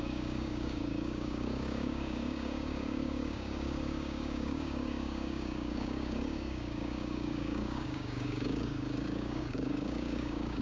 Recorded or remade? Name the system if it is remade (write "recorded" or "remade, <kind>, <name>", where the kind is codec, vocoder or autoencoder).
remade, codec, DAC